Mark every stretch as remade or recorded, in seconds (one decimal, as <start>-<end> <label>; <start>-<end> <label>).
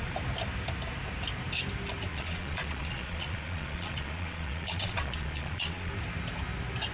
0.0-2.1 recorded; 2.1-5.9 remade; 5.9-6.9 recorded